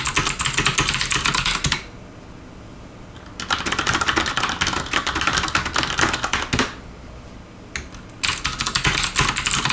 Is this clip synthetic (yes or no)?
no